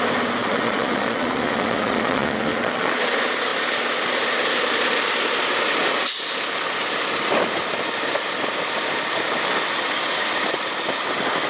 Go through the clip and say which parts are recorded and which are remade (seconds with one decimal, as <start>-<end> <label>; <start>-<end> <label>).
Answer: 0.0-0.4 recorded; 0.4-3.0 remade; 3.0-11.5 recorded